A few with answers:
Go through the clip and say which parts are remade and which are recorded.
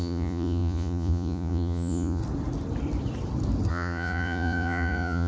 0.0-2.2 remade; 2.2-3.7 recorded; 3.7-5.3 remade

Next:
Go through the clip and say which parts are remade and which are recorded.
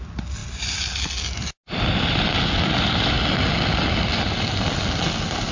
0.0-5.5 recorded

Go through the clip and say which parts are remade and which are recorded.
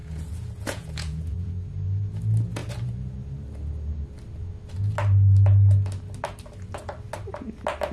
0.0-1.5 remade; 1.5-7.9 recorded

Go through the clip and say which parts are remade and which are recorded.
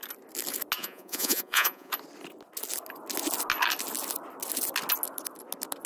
0.0-0.8 recorded; 0.8-1.9 remade; 1.9-5.9 recorded